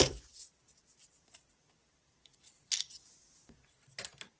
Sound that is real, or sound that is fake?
real